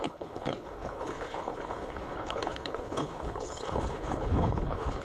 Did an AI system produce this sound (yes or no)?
yes